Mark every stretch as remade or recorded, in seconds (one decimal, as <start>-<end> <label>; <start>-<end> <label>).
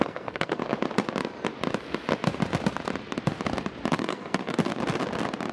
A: 0.0-0.6 remade; 0.6-3.9 recorded; 3.9-4.7 remade; 4.7-5.5 recorded